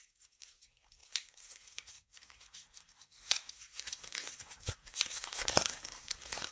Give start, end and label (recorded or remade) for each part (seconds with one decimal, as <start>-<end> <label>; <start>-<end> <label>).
0.0-6.5 remade